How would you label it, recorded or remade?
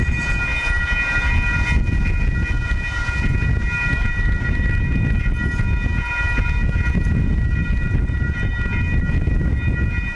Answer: recorded